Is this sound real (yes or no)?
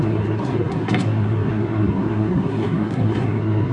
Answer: no